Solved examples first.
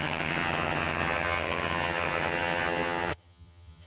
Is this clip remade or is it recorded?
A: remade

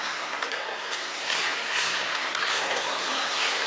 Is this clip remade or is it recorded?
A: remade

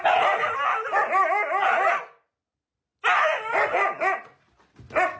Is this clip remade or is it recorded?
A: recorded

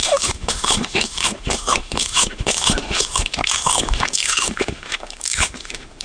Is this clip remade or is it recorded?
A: remade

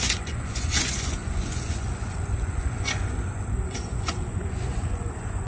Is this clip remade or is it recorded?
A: remade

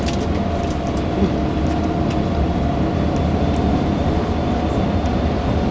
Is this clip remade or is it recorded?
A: recorded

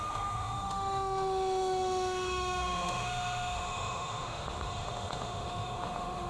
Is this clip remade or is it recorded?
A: remade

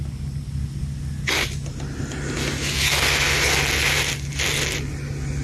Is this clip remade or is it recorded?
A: recorded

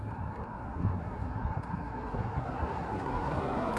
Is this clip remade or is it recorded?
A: remade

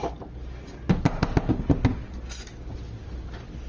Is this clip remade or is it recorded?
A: recorded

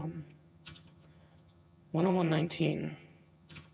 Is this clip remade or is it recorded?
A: remade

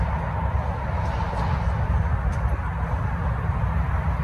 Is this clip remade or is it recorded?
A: recorded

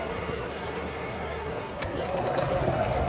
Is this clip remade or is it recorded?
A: remade